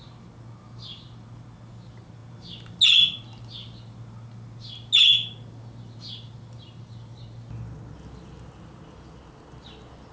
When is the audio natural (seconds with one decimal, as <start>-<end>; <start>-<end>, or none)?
0.0-10.1